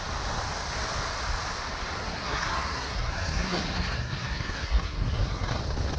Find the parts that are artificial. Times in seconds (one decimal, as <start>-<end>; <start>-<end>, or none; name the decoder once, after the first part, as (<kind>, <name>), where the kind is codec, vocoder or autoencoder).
2.0-5.6 (codec, SNAC)